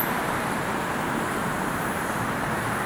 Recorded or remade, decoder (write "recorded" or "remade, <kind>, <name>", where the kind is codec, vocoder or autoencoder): remade, vocoder, BigVGAN v2